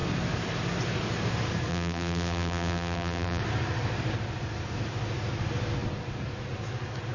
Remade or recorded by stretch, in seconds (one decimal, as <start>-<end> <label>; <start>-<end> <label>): 0.0-1.7 recorded; 1.7-3.4 remade; 3.4-7.1 recorded